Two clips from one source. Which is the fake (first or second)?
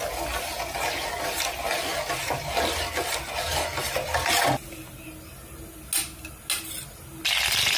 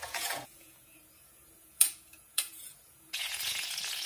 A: second